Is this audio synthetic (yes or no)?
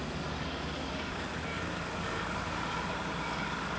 yes